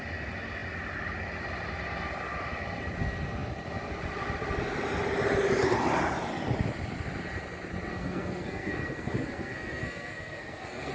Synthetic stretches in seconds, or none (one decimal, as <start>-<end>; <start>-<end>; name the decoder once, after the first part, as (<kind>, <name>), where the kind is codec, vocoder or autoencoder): 7.9-10.9 (codec, SNAC)